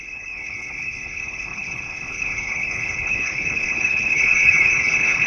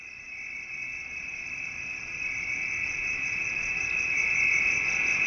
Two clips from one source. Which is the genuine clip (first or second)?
second